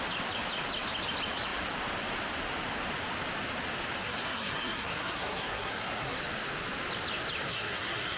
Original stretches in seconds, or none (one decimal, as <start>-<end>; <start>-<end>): 0.0-4.0; 6.2-7.5